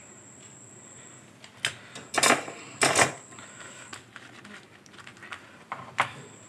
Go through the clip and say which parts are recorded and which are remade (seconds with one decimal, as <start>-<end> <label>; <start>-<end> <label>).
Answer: 0.0-6.5 recorded